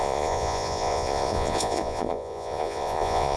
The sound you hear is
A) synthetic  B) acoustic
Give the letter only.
A